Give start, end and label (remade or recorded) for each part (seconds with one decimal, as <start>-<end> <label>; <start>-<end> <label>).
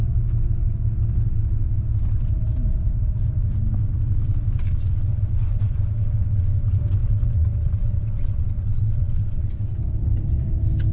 0.0-5.1 recorded; 5.1-6.4 remade; 6.4-7.0 recorded; 7.0-9.7 remade; 9.7-10.9 recorded